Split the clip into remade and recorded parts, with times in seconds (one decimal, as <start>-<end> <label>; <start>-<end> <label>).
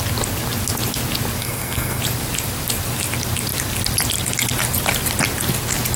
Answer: 0.0-1.4 recorded; 1.4-2.0 remade; 2.0-6.0 recorded